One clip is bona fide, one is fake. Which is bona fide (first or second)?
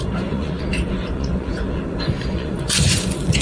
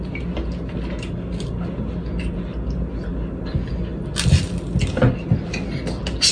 second